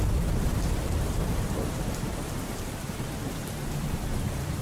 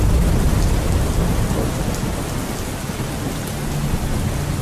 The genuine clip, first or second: second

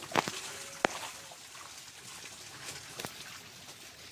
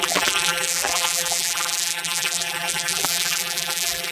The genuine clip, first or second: first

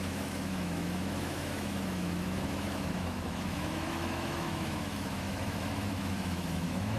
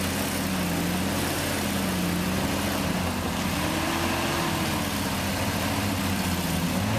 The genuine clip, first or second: second